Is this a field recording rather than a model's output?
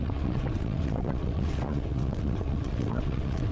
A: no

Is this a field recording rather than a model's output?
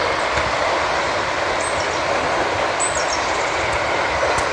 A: yes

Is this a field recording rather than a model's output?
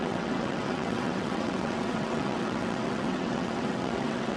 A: no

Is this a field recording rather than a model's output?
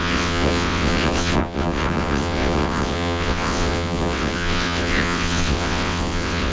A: no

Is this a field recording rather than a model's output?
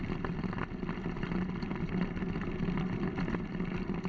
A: yes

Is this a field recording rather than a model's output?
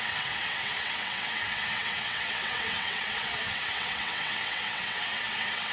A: no